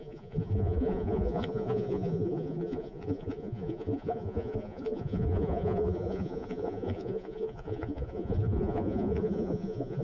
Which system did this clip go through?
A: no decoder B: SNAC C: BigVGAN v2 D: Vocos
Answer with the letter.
D